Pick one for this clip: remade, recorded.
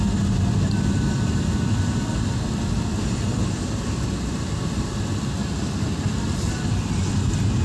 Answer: recorded